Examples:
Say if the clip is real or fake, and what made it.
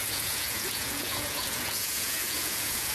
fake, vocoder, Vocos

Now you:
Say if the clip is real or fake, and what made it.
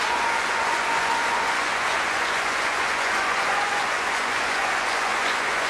fake, vocoder, Vocos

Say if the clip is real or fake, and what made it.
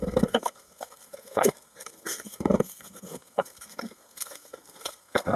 fake, codec, SNAC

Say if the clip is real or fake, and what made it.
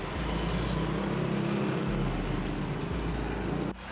real